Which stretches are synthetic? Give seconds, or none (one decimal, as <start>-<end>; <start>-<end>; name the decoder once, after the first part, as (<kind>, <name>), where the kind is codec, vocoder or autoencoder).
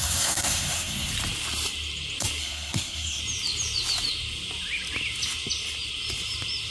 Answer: 0.0-1.1 (codec, SNAC); 2.4-3.2